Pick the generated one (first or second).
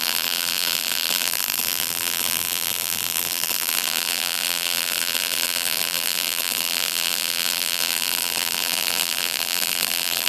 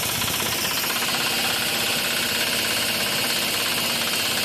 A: first